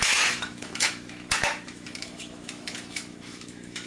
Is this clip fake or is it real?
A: fake